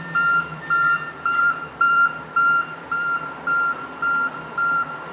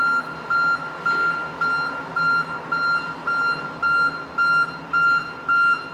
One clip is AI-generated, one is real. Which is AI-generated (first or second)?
first